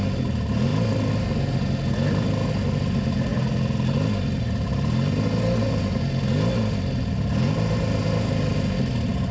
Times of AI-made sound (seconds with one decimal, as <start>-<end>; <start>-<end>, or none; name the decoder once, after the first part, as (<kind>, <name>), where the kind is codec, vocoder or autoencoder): none